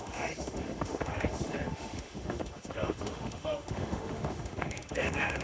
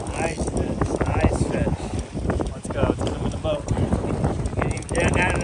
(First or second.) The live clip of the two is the second